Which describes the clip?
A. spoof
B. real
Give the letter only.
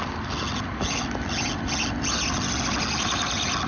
B